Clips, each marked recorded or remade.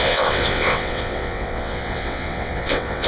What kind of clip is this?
remade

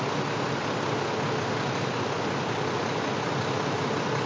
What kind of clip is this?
recorded